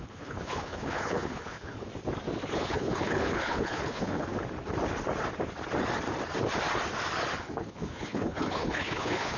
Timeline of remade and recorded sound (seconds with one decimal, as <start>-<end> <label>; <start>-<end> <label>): 0.0-1.9 remade; 1.9-2.5 recorded; 2.5-4.3 remade; 4.3-7.4 recorded; 7.4-9.4 remade